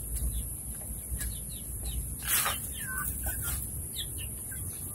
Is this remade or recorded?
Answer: recorded